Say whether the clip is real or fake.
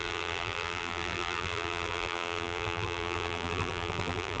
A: fake